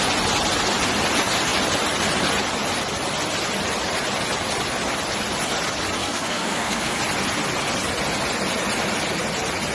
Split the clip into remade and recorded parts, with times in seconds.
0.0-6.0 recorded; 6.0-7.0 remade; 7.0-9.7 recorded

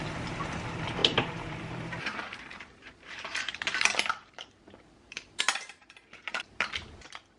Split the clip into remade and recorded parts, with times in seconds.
0.0-7.4 remade